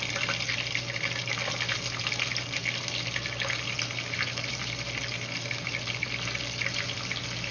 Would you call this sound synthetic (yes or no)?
no